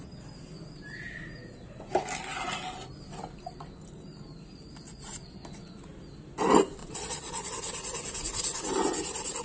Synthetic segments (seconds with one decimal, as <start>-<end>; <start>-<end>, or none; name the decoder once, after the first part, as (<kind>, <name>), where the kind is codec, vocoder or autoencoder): 6.8-7.5 (vocoder, Vocos)